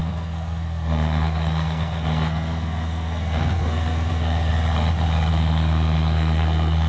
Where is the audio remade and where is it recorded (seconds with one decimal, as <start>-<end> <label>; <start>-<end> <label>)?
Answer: 0.0-4.5 remade; 4.5-5.3 recorded; 5.3-6.9 remade